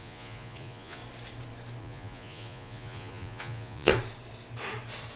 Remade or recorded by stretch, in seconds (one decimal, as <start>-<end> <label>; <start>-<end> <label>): 0.0-1.0 remade; 1.0-1.8 recorded; 1.8-3.9 remade; 3.9-5.2 recorded